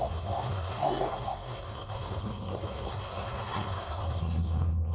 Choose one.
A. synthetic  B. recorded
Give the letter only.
A